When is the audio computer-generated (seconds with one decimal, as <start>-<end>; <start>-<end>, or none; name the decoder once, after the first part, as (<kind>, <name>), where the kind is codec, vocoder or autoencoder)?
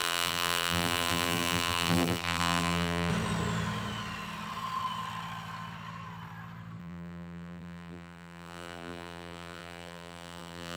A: 0.0-3.1 (vocoder, BigVGAN v2); 6.8-10.8